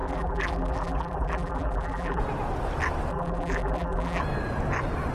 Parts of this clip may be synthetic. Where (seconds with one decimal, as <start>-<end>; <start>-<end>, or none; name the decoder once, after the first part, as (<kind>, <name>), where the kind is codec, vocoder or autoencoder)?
0.0-2.2 (vocoder, BigVGAN v2); 3.1-4.2